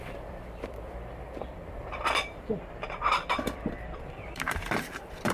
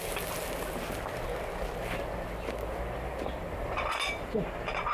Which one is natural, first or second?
second